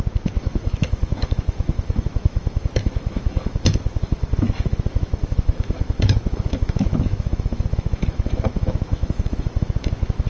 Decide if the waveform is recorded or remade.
remade